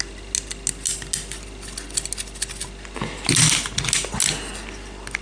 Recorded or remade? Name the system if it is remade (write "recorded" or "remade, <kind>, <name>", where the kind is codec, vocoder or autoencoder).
recorded